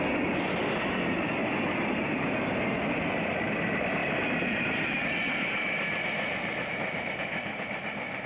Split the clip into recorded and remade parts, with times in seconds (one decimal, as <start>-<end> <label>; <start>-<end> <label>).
0.0-8.3 recorded